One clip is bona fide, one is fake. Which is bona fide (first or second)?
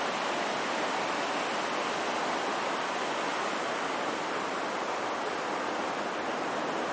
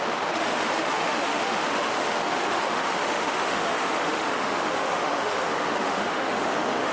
first